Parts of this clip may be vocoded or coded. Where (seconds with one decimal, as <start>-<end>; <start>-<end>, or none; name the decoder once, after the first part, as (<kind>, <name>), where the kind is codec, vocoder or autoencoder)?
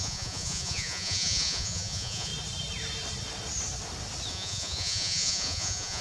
0.0-2.3 (vocoder, Vocos); 4.3-6.0